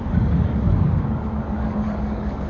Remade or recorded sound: remade